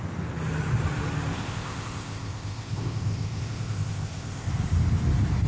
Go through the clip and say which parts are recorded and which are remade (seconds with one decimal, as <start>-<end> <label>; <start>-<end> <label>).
0.0-1.3 recorded; 1.3-4.5 remade; 4.5-5.5 recorded